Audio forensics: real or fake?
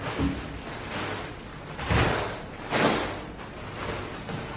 real